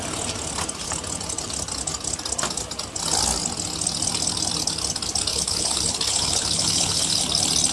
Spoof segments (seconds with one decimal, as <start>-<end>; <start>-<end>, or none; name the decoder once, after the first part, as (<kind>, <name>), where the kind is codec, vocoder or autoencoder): 5.3-7.2 (codec, HILCodec)